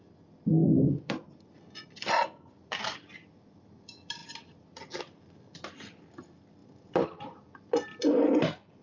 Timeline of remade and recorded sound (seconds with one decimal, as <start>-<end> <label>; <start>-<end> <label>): 0.0-0.6 recorded; 0.6-1.3 remade; 1.3-4.2 recorded; 4.2-5.0 remade; 5.0-6.6 recorded; 6.6-8.2 remade; 8.2-8.8 recorded